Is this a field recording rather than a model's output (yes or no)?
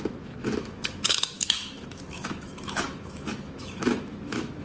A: no